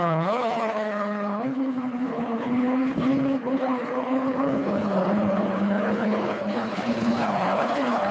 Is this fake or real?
fake